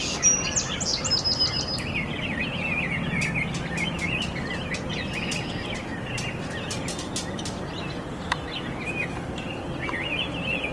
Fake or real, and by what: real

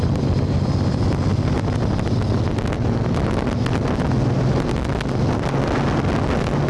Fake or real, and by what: real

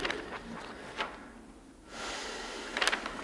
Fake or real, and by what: real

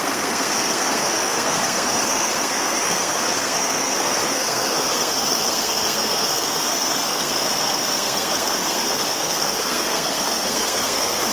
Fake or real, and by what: fake, codec, SNAC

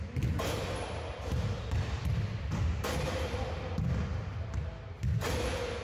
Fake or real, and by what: real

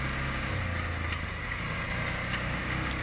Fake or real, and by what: real